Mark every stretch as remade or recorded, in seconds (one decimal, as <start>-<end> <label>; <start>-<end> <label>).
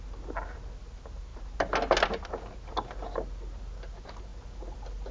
0.0-5.1 recorded